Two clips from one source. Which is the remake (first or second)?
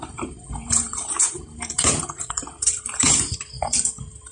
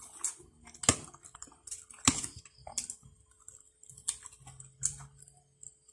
first